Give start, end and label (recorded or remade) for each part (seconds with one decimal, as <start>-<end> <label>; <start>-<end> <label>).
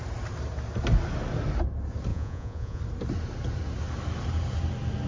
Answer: 0.0-2.1 recorded; 2.1-2.8 remade; 2.8-5.1 recorded